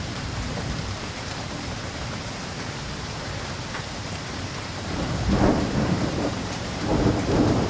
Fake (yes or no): yes